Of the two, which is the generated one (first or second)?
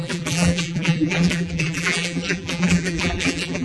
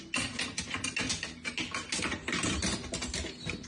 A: first